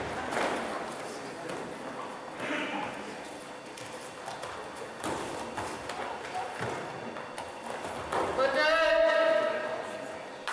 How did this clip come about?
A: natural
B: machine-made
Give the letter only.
A